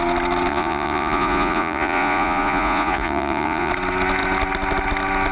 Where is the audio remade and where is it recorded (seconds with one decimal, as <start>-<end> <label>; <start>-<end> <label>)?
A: 0.0-0.5 recorded; 0.5-3.7 remade; 3.7-5.3 recorded